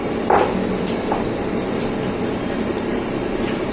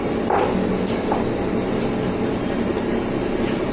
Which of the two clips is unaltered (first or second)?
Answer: second